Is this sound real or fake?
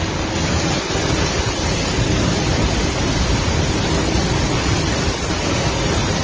real